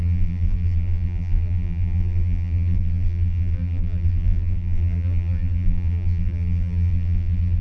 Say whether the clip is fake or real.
fake